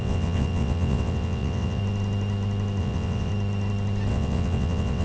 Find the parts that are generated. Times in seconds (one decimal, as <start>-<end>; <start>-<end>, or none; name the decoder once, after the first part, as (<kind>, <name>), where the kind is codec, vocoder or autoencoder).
0.0-1.8 (vocoder, WaveNeXt); 2.8-3.3; 4.1-5.0